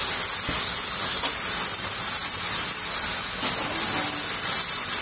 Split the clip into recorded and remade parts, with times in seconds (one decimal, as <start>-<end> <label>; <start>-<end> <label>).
0.0-5.0 recorded